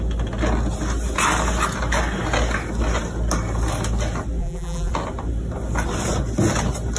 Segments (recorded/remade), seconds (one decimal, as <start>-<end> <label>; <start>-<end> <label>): 0.0-4.4 recorded; 4.4-4.9 remade; 4.9-7.0 recorded